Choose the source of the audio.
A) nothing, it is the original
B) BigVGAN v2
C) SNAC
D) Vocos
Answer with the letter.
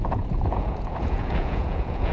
D